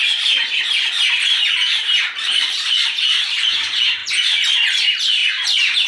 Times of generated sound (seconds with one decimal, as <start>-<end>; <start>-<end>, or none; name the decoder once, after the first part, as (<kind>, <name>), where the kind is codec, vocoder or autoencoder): 0.0-0.4 (vocoder, BigVGAN v2); 2.0-4.0; 4.8-5.9